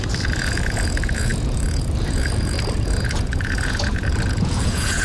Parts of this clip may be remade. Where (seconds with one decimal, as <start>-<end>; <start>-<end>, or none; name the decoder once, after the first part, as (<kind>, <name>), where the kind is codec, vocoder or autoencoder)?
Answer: 0.0-5.0 (vocoder, Vocos)